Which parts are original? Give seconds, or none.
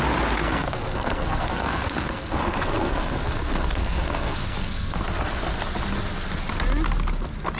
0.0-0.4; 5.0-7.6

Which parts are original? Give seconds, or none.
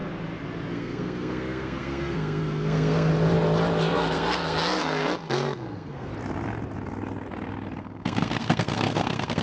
0.0-0.7; 3.1-3.8; 6.1-7.8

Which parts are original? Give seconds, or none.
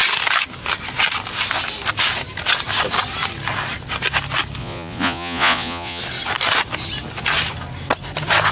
0.0-4.6; 6.0-8.5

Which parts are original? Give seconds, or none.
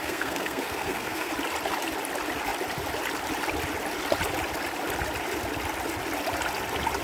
1.3-7.0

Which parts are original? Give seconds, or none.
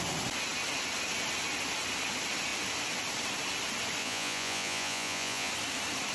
0.0-4.0; 5.5-6.1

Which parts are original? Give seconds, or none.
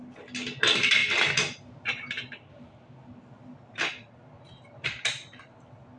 0.0-6.0